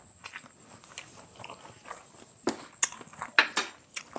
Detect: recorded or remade recorded